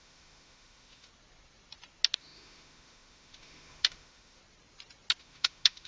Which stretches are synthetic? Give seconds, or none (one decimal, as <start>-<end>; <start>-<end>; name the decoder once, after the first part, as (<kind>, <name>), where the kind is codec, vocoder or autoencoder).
0.0-1.1 (autoencoder, DAC-VAE); 2.2-4.4; 5.2-5.9